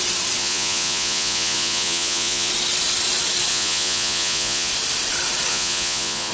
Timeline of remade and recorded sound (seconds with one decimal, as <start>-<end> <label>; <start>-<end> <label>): 0.0-0.4 recorded; 0.4-2.5 remade; 2.5-3.5 recorded; 3.5-4.7 remade; 4.7-5.5 recorded; 5.5-6.3 remade